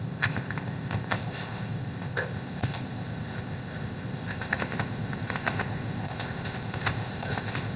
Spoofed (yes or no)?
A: yes